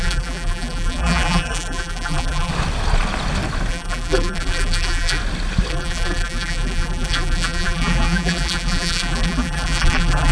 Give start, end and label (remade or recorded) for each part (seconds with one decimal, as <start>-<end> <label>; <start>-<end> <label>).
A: 0.0-2.5 remade; 2.5-3.7 recorded; 3.7-5.2 remade; 5.2-5.7 recorded; 5.7-10.3 remade